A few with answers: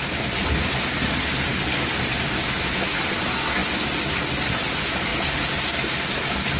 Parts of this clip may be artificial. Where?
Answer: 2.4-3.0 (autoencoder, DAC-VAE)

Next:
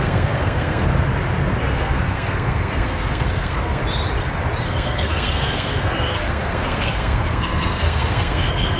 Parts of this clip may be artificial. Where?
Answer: 0.0-0.9 (codec, SNAC); 1.7-3.8; 4.6-8.8

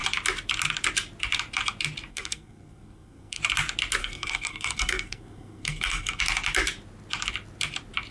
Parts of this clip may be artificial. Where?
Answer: 2.1-3.4 (codec, SNAC); 4.0-6.2

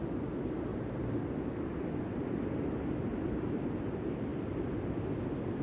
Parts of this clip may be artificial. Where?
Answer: 0.7-1.8 (vocoder, BigVGAN v2); 3.1-3.7

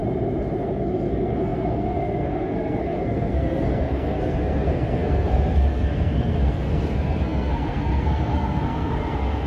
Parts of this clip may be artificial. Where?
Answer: 0.6-9.5 (codec, SNAC)

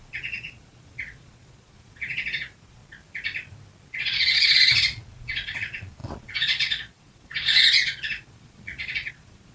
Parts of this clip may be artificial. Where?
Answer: 0.0-2.8 (vocoder, Vocos); 3.9-9.5

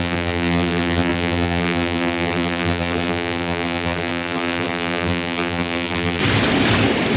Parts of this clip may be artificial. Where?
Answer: 0.0-6.2 (vocoder, BigVGAN v2)

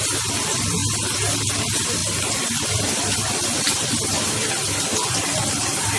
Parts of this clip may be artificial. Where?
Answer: 2.0-4.5 (vocoder, BigVGAN v2)